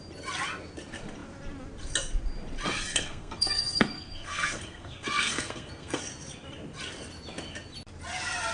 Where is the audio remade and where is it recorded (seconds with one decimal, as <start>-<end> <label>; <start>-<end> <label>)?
0.0-2.9 recorded; 2.9-6.0 remade; 6.0-8.5 recorded